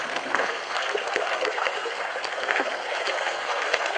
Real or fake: fake